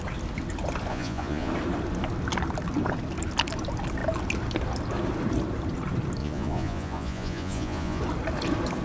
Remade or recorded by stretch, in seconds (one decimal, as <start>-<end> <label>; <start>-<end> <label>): 0.0-0.9 recorded; 0.9-1.5 remade; 1.5-6.2 recorded; 6.2-8.0 remade; 8.0-8.8 recorded